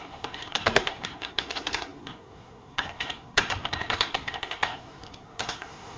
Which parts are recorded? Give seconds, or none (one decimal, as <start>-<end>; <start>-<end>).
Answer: none